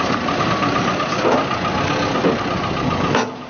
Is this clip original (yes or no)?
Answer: yes